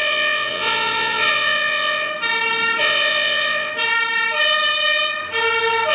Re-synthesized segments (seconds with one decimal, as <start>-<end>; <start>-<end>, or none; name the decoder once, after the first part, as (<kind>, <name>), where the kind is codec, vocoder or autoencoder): 0.0-2.1 (vocoder, Vocos); 2.8-3.7